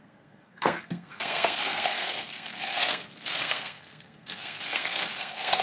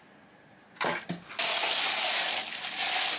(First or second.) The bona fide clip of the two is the second